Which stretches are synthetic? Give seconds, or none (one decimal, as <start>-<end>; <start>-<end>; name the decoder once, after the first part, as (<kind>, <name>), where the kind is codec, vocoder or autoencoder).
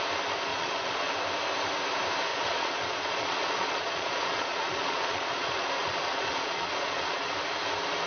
0.5-1.1 (vocoder, Vocos); 2.3-7.2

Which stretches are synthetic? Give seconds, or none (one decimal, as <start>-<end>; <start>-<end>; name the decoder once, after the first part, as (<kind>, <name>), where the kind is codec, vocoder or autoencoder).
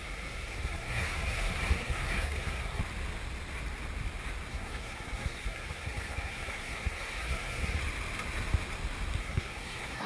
0.0-2.8 (codec, SNAC); 4.5-7.8; 9.2-10.1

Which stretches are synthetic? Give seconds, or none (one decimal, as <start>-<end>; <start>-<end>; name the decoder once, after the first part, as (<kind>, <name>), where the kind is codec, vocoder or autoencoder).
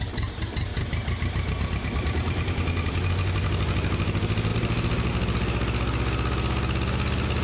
0.7-3.1 (vocoder, BigVGAN v2); 4.5-5.1